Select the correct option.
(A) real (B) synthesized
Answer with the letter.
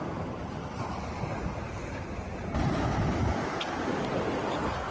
A